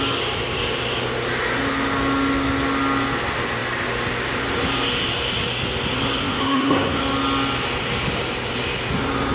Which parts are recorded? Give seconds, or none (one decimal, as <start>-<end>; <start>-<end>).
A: 0.0-6.2; 7.0-9.3